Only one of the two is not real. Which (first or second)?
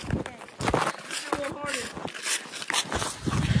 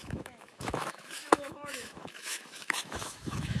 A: second